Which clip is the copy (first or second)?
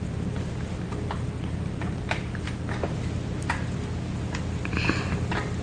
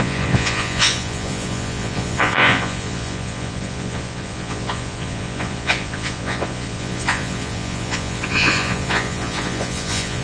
second